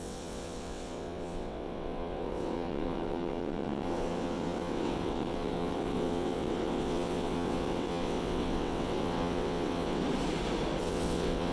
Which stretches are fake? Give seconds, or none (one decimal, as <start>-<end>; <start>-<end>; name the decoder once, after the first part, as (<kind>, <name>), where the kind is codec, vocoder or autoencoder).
0.0-10.0 (vocoder, WaveNeXt); 10.8-11.5